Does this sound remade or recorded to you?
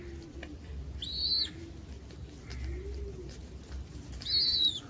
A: recorded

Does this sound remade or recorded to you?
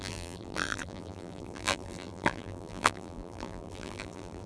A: remade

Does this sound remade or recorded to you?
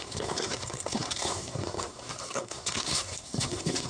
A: remade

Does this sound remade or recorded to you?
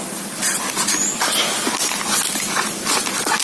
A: recorded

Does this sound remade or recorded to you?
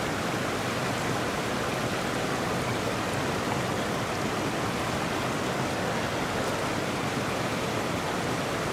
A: recorded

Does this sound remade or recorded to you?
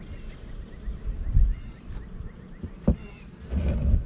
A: recorded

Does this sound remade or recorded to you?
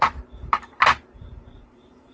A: remade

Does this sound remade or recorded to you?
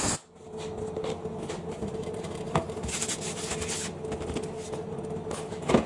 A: recorded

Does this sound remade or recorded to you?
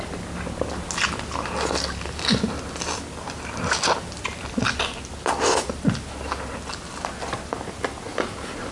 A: recorded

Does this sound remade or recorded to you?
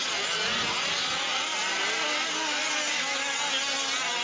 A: recorded